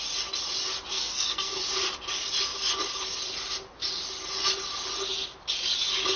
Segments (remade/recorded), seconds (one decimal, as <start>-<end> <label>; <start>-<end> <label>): 0.0-0.9 recorded; 0.9-1.6 remade; 1.6-6.2 recorded